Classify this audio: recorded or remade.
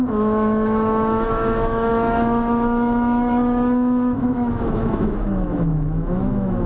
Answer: remade